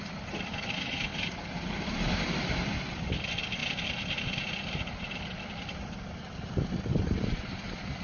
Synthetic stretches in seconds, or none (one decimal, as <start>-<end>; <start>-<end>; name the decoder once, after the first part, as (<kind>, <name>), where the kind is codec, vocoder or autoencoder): 0.0-1.1 (vocoder, BigVGAN v2); 2.7-3.6; 5.4-8.0